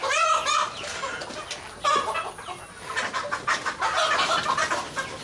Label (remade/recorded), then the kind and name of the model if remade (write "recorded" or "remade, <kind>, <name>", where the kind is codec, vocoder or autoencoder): recorded